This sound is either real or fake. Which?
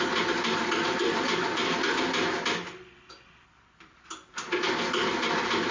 real